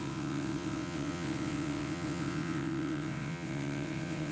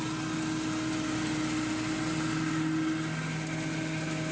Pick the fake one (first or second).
first